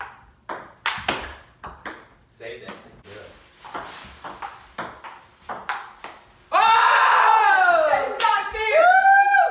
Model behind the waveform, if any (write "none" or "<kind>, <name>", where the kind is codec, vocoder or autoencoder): none